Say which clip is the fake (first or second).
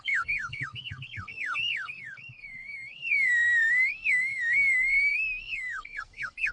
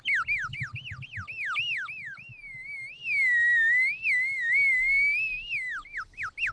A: first